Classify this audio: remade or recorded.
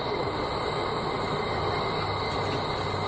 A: recorded